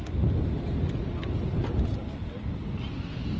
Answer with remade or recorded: recorded